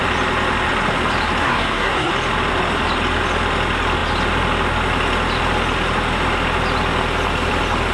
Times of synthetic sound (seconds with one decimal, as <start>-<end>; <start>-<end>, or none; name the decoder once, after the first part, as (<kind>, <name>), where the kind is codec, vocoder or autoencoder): 1.4-2.1 (codec, SNAC)

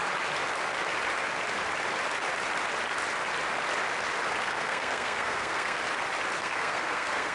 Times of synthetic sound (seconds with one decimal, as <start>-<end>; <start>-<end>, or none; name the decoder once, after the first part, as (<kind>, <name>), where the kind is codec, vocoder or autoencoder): 4.4-5.8 (codec, SNAC); 6.4-7.3

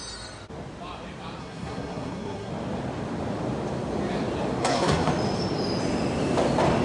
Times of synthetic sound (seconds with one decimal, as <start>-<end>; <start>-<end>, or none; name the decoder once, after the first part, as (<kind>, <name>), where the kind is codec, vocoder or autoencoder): 1.4-2.5 (codec, SNAC); 4.6-5.1

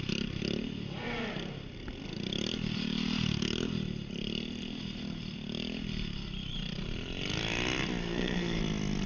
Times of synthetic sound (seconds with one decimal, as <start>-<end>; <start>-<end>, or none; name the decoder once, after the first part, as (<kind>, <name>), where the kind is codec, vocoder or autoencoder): 8.0-8.6 (codec, SNAC)

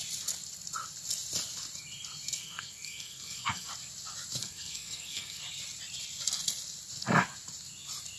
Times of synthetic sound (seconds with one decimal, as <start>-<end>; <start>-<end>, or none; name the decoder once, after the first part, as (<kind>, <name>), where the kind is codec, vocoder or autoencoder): 2.4-3.7 (codec, SNAC); 4.4-5.4

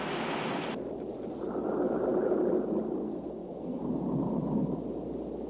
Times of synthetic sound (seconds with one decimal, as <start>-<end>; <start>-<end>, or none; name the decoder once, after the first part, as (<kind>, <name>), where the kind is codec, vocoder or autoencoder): 3.0-3.8 (codec, SNAC)

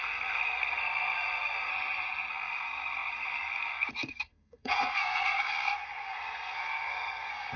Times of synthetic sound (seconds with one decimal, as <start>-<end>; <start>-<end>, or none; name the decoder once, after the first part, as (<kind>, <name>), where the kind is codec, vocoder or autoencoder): 0.0-1.7 (codec, SNAC); 2.3-7.6